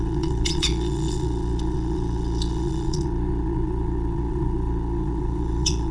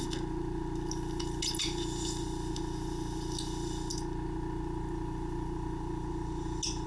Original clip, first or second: second